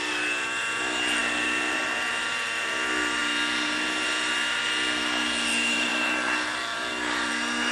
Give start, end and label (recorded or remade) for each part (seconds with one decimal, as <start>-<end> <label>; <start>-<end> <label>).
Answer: 0.0-7.7 recorded

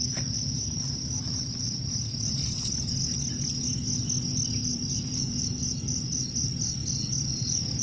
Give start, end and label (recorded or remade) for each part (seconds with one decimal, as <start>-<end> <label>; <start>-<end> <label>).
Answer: 0.0-1.2 recorded; 1.2-1.9 remade; 1.9-4.7 recorded; 4.7-6.1 remade; 6.1-7.8 recorded

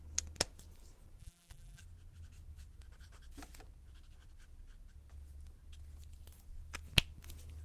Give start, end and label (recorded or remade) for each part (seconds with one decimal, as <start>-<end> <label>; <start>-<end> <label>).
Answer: 0.0-1.2 recorded; 1.2-1.8 remade; 1.8-7.6 recorded

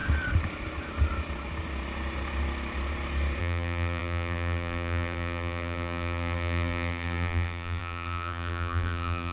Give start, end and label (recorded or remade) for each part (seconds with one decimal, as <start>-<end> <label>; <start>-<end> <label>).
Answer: 0.0-3.4 recorded; 3.4-9.3 remade

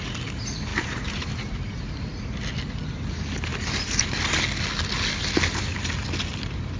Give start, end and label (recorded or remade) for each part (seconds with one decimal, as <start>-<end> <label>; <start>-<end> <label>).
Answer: 0.0-0.7 recorded; 0.7-2.4 remade; 2.4-6.8 recorded

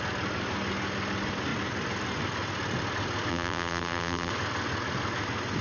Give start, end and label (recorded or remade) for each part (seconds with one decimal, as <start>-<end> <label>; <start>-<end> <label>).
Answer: 0.0-3.3 recorded; 3.3-4.3 remade; 4.3-5.6 recorded